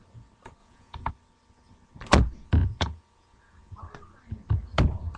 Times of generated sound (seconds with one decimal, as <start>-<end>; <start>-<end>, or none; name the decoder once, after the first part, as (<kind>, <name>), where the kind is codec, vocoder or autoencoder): 0.6-1.1 (vocoder, Vocos); 2.6-3.8